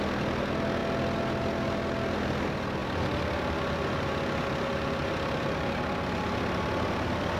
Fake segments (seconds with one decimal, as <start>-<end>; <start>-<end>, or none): none